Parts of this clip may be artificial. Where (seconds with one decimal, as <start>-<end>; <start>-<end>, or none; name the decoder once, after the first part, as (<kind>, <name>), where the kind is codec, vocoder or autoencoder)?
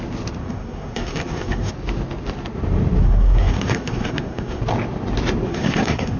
0.4-1.7 (codec, SNAC); 3.0-4.6; 5.5-6.2